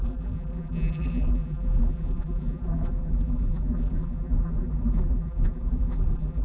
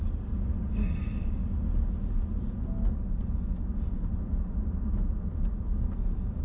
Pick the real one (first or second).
second